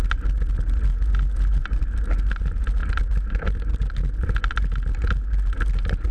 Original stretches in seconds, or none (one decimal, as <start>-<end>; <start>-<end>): 0.0-6.1